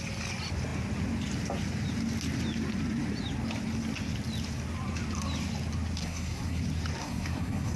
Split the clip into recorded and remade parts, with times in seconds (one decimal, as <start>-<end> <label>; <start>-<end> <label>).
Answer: 0.0-6.0 recorded; 6.0-6.6 remade; 6.6-7.0 recorded; 7.0-7.8 remade

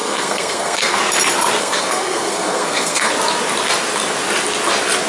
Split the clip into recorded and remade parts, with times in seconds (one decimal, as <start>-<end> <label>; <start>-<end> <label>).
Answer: 0.0-1.0 remade; 1.0-1.6 recorded; 1.6-3.1 remade; 3.1-5.1 recorded

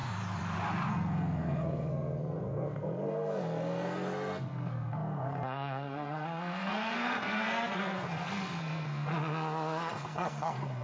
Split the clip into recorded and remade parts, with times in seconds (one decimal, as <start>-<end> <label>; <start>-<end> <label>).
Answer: 0.0-0.9 recorded; 0.9-9.1 remade; 9.1-9.9 recorded; 9.9-10.8 remade

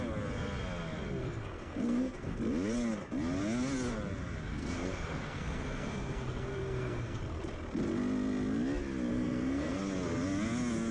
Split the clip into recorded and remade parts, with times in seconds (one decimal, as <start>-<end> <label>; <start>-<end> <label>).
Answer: 0.0-1.2 recorded; 1.2-2.4 remade; 2.4-4.5 recorded; 4.5-7.4 remade; 7.4-9.1 recorded; 9.1-9.8 remade; 9.8-10.9 recorded

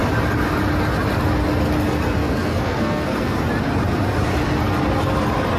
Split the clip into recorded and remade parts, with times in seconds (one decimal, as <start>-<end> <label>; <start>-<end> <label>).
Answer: 0.0-2.2 recorded; 2.2-3.4 remade; 3.4-5.6 recorded